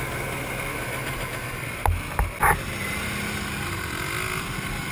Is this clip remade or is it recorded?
recorded